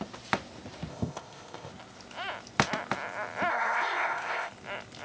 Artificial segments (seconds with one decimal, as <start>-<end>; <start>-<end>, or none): 0.9-1.7; 3.5-4.5